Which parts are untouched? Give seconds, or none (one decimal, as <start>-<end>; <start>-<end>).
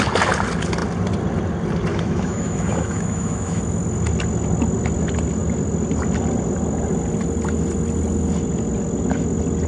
0.0-1.9; 3.6-9.7